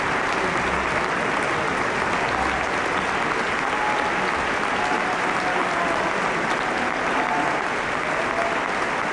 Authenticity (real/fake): real